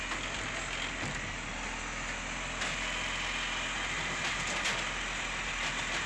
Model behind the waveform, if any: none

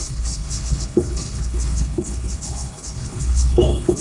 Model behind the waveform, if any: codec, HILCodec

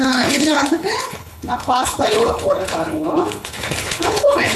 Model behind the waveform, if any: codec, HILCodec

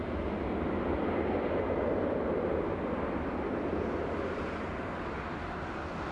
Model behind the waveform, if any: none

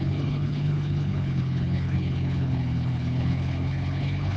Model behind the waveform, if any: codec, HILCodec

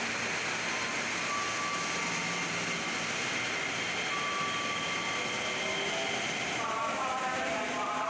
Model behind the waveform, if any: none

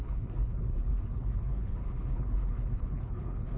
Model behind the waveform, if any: codec, HILCodec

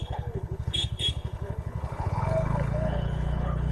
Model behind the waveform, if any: codec, HILCodec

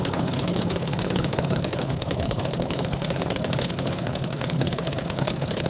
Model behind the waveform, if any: codec, HILCodec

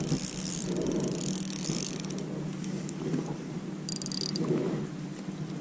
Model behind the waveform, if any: none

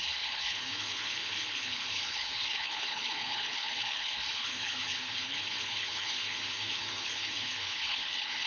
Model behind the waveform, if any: codec, HILCodec